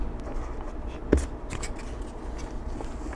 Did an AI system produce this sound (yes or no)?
no